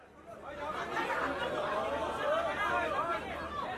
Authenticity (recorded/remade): recorded